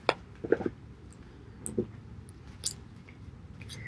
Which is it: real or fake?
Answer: real